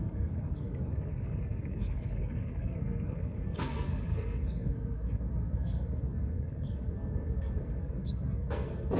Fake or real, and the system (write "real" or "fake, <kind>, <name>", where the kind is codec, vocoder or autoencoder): fake, codec, SNAC